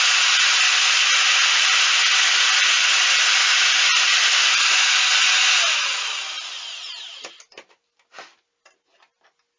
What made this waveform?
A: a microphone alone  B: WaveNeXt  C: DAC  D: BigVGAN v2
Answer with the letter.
A